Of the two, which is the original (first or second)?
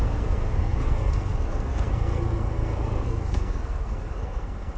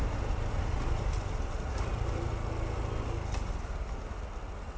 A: second